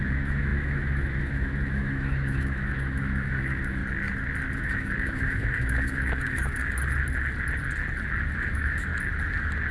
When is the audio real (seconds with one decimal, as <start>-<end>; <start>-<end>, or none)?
3.8-4.6; 6.6-8.4; 8.9-9.7